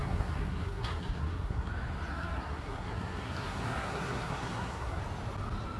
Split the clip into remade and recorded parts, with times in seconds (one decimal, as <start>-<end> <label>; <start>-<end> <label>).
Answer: 0.0-1.7 remade; 1.7-2.1 recorded; 2.1-5.0 remade; 5.0-5.8 recorded